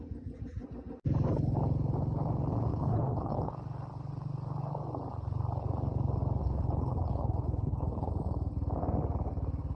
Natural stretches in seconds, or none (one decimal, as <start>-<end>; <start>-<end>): 0.0-2.7; 3.5-6.4; 8.1-9.8